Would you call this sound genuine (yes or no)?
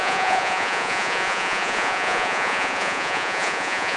no